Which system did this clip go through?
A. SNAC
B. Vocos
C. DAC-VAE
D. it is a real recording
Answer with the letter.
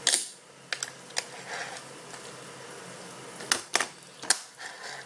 D